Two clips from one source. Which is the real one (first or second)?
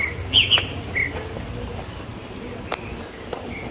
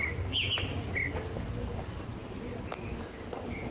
second